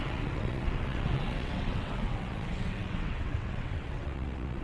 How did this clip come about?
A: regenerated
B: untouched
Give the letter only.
A